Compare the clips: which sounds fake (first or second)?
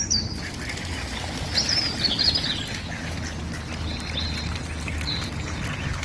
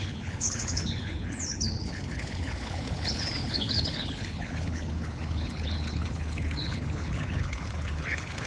second